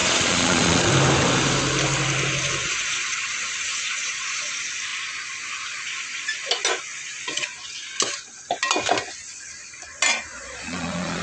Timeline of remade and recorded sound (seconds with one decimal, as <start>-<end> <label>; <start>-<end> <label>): 0.0-0.9 remade; 0.9-2.6 recorded; 2.6-4.5 remade; 4.5-10.3 recorded; 10.3-11.2 remade